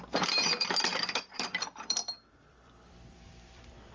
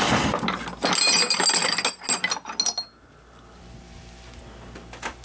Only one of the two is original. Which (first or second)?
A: second